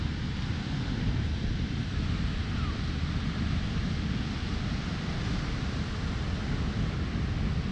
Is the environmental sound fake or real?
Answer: real